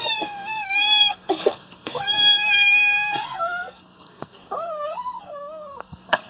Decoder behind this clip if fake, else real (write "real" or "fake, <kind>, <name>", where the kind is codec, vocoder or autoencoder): fake, codec, SNAC